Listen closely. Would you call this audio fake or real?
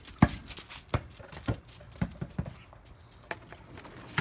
real